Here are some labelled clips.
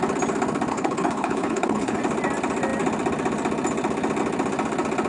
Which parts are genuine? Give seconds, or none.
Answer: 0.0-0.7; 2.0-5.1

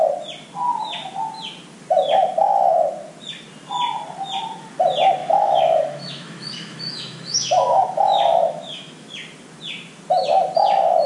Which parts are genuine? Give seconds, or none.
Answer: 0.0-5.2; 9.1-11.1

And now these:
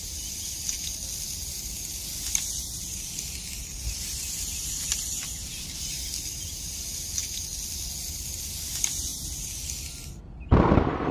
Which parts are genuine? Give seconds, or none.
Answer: 0.0-11.1

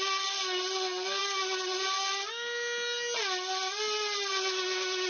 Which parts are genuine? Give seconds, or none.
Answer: 0.0-5.1

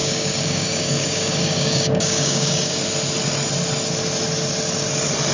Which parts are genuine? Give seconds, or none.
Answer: 2.8-5.3